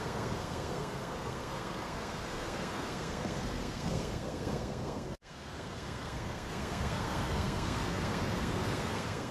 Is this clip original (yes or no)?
no